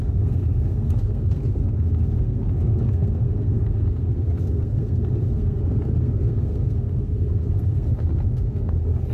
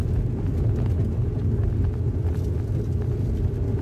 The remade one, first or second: first